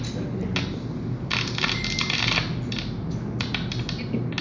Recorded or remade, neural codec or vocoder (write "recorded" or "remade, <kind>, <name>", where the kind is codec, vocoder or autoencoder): recorded